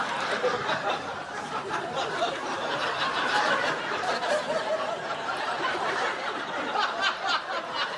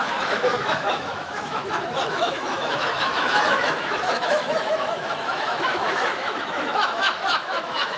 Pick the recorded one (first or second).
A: first